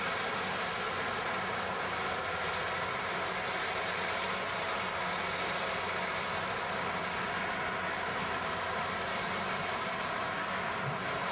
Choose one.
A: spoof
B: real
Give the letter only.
B